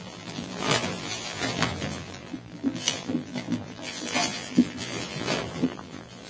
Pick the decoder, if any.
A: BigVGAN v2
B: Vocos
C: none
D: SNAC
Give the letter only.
A